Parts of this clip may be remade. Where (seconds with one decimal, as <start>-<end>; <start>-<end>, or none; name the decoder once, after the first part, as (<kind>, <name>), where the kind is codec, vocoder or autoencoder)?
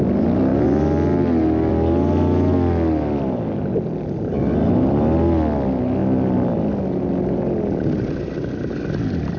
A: none